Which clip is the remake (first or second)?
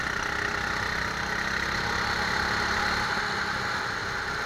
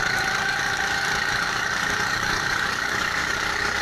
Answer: second